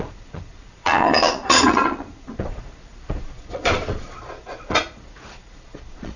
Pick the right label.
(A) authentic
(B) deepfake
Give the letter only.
B